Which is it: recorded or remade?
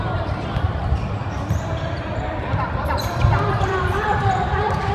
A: remade